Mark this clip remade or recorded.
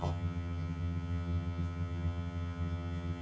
remade